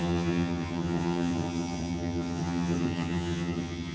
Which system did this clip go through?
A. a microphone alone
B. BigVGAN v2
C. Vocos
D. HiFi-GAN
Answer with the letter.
D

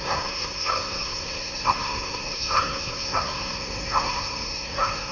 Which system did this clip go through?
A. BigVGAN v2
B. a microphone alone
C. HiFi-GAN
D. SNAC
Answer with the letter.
D